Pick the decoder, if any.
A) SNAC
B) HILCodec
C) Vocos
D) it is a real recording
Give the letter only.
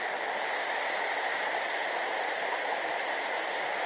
D